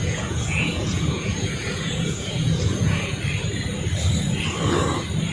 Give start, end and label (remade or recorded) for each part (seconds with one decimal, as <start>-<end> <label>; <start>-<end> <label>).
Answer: 0.0-3.2 remade; 3.2-5.3 recorded